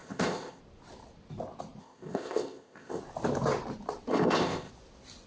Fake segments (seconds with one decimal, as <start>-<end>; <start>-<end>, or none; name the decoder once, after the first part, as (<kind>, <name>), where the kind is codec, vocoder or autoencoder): 0.0-0.6 (codec, ZipCodec); 1.8-3.0; 4.1-4.7